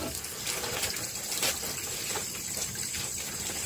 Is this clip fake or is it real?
real